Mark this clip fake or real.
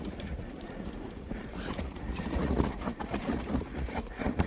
fake